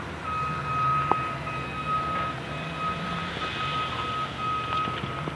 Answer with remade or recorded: recorded